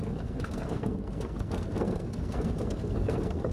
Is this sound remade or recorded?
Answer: remade